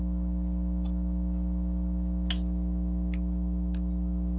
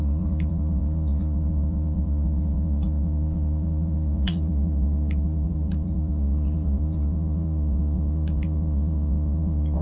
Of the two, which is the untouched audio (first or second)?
first